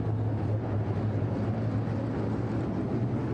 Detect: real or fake real